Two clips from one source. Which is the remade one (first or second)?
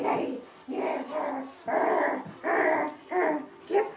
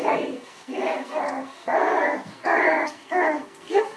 second